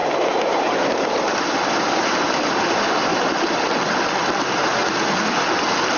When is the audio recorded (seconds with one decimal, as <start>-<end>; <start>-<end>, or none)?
0.0-6.0